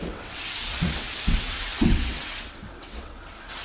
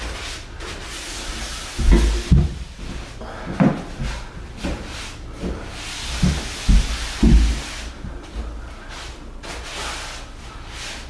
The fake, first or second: first